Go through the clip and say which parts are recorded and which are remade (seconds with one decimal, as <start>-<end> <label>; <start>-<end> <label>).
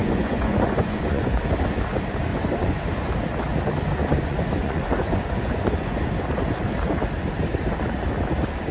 0.0-1.4 remade; 1.4-2.3 recorded; 2.3-3.1 remade; 3.1-4.0 recorded; 4.0-6.1 remade; 6.1-8.7 recorded